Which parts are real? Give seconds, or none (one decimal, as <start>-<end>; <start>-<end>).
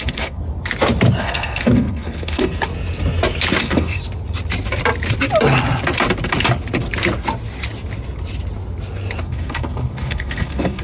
0.4-1.2; 2.7-3.6; 4.0-9.2